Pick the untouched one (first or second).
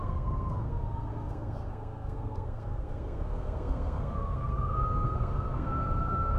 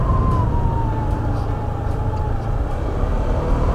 second